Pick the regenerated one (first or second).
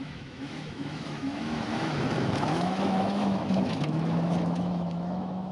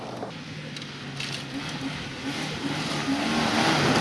first